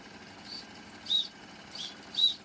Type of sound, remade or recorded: recorded